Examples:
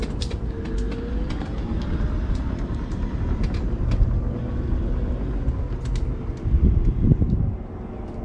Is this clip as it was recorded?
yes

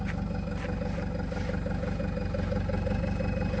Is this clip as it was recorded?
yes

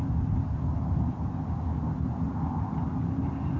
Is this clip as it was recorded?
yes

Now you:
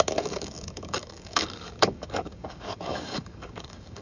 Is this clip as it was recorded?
no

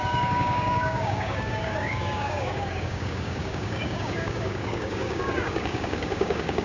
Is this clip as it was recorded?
no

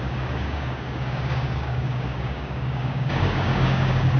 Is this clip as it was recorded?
no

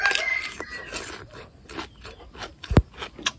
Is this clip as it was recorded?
yes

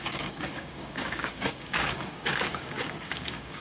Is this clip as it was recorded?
no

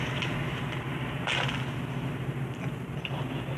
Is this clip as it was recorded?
yes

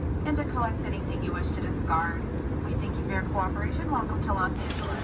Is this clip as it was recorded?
yes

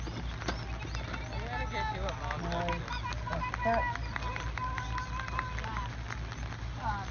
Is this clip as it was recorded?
yes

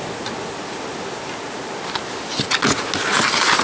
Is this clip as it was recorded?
yes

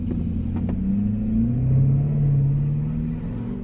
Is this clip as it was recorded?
yes